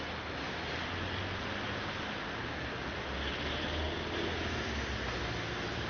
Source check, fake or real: real